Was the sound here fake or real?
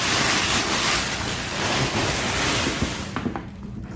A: real